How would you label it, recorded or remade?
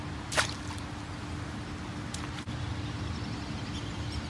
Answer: recorded